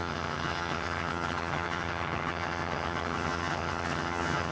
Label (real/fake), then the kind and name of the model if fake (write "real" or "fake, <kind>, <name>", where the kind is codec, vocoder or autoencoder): fake, vocoder, HiFi-GAN